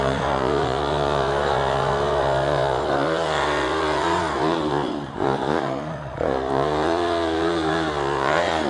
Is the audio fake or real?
fake